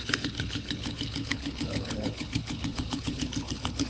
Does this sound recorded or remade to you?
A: remade